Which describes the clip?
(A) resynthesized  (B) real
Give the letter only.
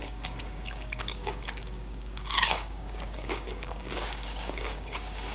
A